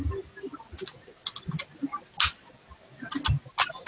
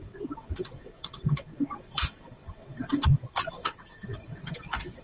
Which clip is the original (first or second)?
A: first